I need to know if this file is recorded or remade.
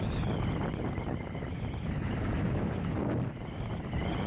recorded